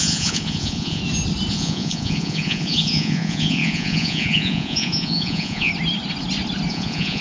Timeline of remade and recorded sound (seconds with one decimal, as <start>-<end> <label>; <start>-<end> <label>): 0.0-1.0 remade; 1.0-1.5 recorded; 1.5-5.7 remade; 5.7-6.7 recorded; 6.7-7.2 remade